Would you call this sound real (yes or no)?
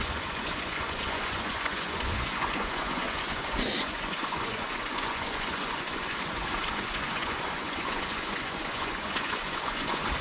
no